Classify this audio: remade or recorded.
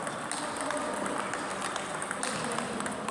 recorded